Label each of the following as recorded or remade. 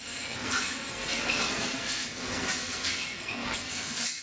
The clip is remade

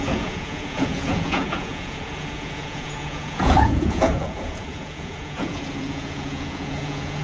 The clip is remade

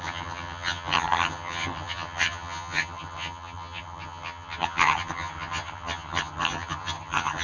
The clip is remade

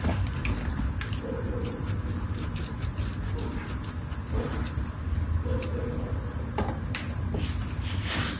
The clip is recorded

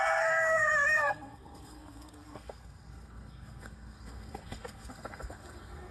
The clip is remade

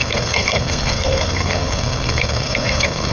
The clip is remade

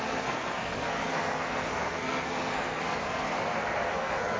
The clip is remade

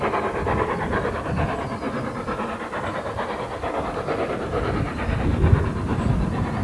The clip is recorded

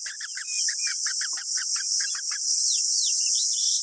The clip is recorded